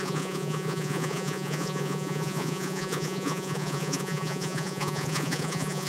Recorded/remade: remade